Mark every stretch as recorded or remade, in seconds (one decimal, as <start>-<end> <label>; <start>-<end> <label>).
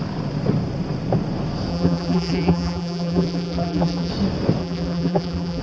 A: 0.0-1.7 recorded; 1.7-4.1 remade; 4.1-4.6 recorded; 4.6-5.6 remade